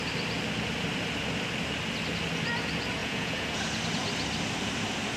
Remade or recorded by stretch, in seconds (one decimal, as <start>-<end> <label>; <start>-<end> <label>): 0.0-3.0 recorded; 3.0-3.6 remade; 3.6-5.2 recorded